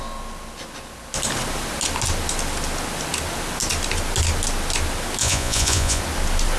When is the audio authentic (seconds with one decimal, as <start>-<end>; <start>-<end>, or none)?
0.0-5.2; 6.0-6.6